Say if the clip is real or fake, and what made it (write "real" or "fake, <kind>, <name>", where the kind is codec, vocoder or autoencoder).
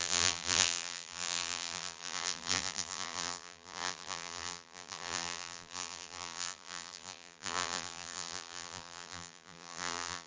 fake, vocoder, BigVGAN v2